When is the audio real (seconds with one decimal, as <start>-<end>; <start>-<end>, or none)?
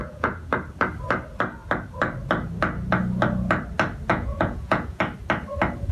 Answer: 0.5-4.1; 5.0-5.9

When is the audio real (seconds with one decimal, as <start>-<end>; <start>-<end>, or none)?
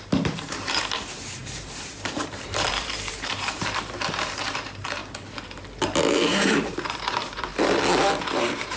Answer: 5.0-6.1; 7.5-8.2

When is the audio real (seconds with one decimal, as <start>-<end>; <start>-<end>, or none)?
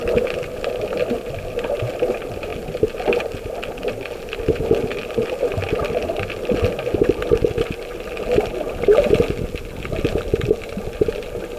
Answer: 0.0-11.6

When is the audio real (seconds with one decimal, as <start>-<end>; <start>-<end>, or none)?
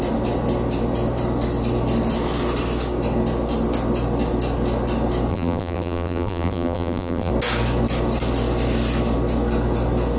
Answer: 0.0-5.3; 7.3-10.2